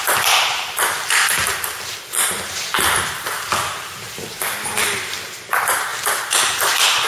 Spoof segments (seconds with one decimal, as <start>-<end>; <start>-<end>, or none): none

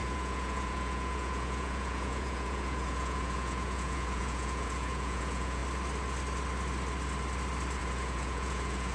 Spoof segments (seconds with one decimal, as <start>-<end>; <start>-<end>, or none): 0.0-5.6; 7.8-8.9

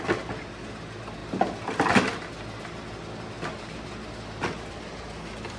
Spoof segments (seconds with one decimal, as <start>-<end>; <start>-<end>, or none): none

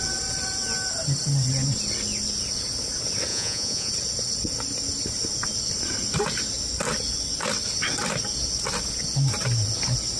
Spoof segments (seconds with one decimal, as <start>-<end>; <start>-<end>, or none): 3.3-3.9

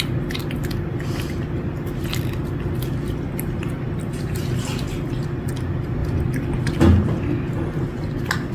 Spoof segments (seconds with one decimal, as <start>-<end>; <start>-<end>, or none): none

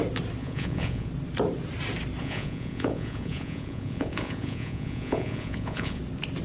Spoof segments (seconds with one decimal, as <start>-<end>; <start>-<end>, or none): 0.4-1.1; 2.2-6.0

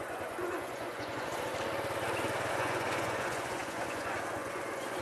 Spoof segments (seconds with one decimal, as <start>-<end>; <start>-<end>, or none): 0.0-1.5; 2.5-5.0